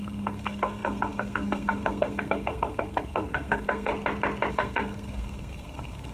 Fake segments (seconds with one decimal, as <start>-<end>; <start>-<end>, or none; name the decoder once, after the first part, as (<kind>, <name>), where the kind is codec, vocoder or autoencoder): 0.0-3.9 (codec, SNAC); 4.5-6.1